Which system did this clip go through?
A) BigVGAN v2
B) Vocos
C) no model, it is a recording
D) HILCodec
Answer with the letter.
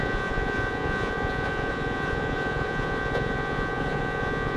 B